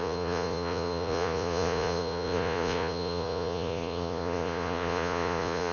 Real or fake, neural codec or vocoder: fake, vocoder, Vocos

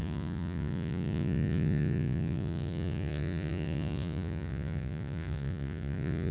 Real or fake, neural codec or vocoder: fake, vocoder, Vocos